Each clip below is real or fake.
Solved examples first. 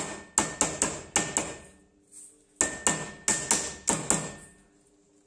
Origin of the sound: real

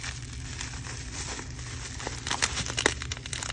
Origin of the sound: real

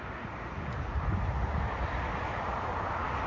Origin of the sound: real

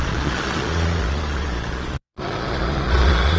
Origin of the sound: fake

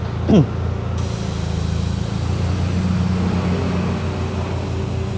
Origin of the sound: real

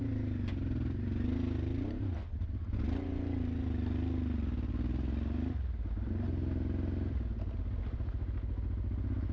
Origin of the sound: real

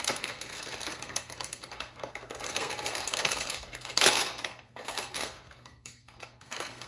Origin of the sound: fake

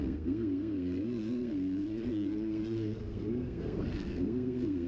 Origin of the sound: fake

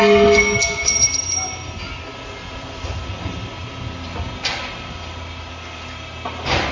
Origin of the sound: real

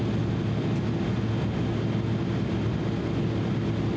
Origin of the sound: real